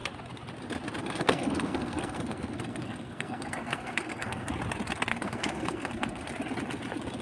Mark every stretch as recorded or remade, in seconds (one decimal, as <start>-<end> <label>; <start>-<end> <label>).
0.0-1.0 recorded; 1.0-4.5 remade; 4.5-5.1 recorded; 5.1-6.3 remade; 6.3-7.2 recorded